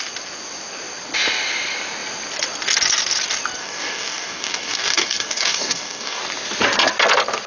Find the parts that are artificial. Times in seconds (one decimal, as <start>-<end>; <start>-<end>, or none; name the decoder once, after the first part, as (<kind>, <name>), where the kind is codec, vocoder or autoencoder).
3.6-6.2 (codec, DAC)